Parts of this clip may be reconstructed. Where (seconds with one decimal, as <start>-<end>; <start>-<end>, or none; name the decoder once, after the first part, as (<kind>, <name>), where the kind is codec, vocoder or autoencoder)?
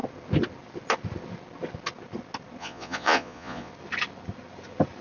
2.6-3.7 (vocoder, Vocos)